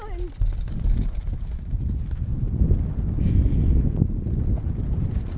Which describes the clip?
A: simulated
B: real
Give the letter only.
B